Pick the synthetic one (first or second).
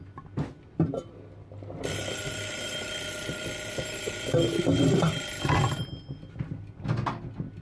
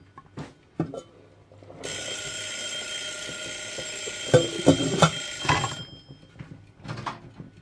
first